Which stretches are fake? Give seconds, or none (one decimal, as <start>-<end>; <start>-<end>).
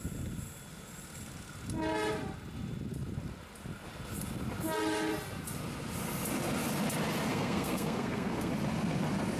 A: 7.3-8.5